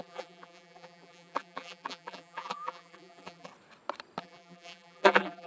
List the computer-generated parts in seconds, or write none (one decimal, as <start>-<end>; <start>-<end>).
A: 0.0-3.5; 4.2-5.5